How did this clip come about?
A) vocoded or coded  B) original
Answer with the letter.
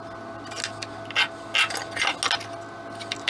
B